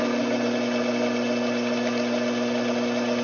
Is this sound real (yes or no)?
yes